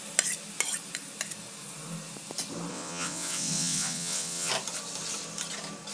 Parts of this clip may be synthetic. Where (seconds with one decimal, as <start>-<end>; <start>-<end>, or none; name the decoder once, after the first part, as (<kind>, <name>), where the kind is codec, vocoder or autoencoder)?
2.7-4.5 (vocoder, WaveNeXt)

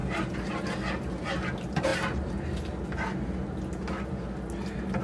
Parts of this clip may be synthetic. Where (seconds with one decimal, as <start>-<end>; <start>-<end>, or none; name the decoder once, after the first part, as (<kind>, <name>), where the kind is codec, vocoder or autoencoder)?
0.0-0.5 (vocoder, BigVGAN v2)